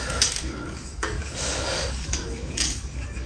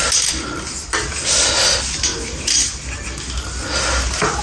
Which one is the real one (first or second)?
second